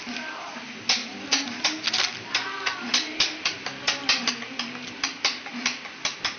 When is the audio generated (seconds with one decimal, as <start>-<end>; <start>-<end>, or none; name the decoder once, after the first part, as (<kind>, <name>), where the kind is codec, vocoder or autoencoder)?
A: none